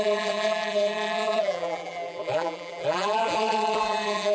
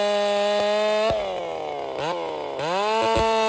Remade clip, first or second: first